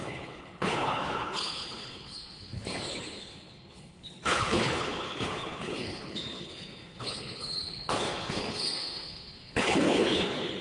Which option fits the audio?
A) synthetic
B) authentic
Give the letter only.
A